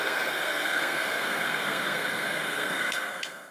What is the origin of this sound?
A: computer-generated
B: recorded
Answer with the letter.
A